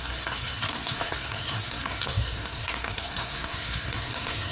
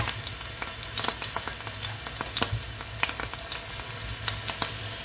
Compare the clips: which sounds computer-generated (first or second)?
first